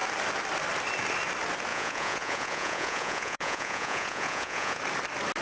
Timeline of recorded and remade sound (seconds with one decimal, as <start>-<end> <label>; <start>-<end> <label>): 0.0-1.7 recorded; 1.7-4.8 remade; 4.8-5.4 recorded